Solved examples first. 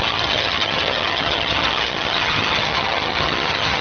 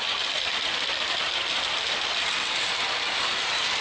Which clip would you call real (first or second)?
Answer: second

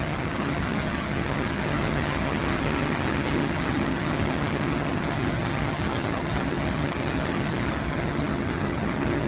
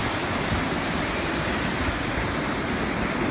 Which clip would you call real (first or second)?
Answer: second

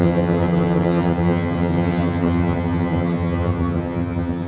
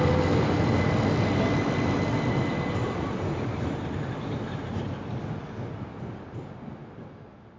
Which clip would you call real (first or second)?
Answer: second